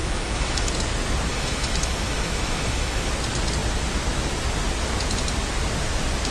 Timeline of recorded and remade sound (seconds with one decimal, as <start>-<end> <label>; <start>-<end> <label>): 0.0-0.7 remade; 0.7-1.3 recorded; 1.3-3.1 remade; 3.1-6.3 recorded